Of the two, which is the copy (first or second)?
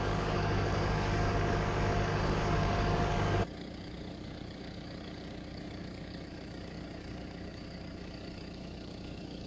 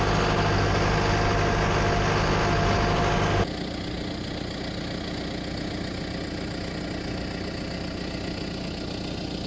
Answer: first